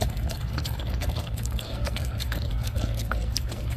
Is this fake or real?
fake